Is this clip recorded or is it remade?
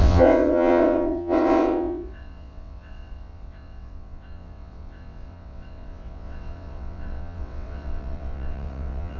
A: remade